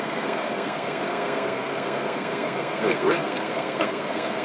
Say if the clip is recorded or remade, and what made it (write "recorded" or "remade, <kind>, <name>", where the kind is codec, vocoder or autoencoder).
remade, codec, SNAC